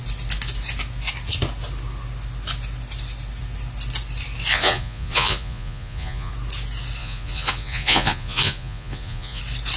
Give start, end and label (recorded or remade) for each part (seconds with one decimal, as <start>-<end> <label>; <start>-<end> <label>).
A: 0.0-4.5 recorded; 4.5-6.3 remade; 6.3-7.0 recorded; 7.0-9.4 remade; 9.4-9.8 recorded